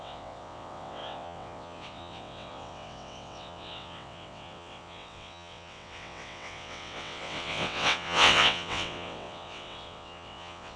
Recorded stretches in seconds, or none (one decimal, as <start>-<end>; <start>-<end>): none